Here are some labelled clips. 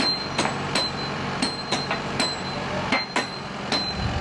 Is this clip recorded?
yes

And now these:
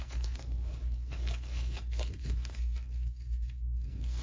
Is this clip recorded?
no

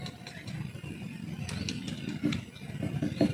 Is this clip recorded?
yes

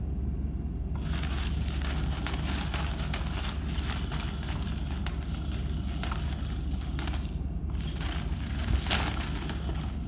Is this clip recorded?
yes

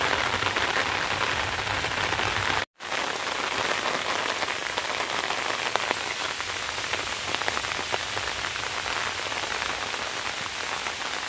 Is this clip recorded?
yes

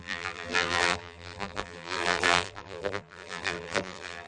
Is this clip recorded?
no